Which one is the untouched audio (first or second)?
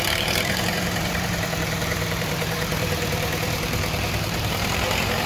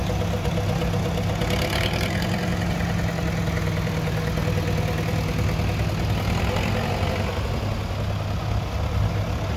second